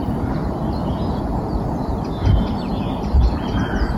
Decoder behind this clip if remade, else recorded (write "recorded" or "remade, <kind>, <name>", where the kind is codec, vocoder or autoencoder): recorded